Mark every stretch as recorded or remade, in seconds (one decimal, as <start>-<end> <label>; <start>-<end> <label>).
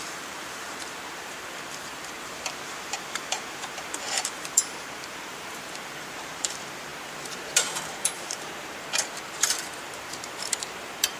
0.0-11.2 remade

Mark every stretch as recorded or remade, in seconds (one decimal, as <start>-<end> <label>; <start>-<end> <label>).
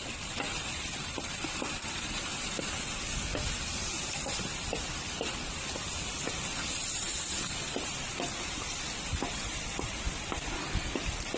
0.0-3.3 remade; 3.3-5.8 recorded; 5.8-7.1 remade; 7.1-7.9 recorded; 7.9-11.4 remade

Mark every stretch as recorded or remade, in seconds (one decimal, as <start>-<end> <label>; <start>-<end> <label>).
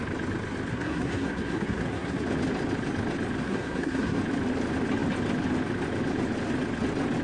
0.0-0.7 recorded; 0.7-2.2 remade; 2.2-3.4 recorded; 3.4-4.2 remade; 4.2-7.2 recorded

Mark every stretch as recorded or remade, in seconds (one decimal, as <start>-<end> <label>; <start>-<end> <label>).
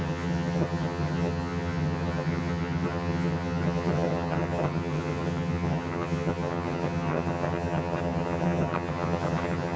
0.0-9.8 remade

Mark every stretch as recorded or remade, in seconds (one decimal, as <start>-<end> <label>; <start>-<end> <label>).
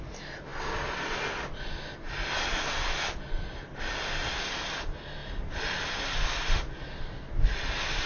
0.0-8.1 recorded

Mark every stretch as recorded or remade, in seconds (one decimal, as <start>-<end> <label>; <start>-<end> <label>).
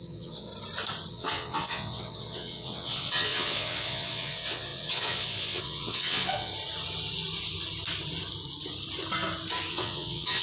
0.0-0.5 remade; 0.5-1.1 recorded; 1.1-6.5 remade; 6.5-9.7 recorded; 9.7-10.4 remade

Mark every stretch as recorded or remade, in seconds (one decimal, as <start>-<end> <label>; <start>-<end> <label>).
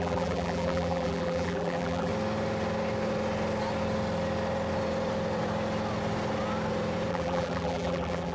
0.0-2.1 remade; 2.1-7.1 recorded; 7.1-8.3 remade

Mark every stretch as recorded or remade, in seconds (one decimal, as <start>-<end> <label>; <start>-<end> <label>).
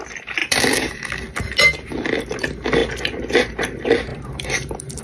0.0-0.4 recorded; 0.4-1.1 remade; 1.1-4.1 recorded; 4.1-5.0 remade